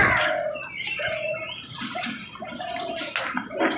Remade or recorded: recorded